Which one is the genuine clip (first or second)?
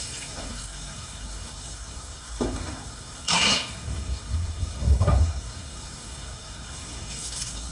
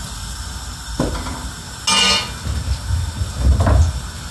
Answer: second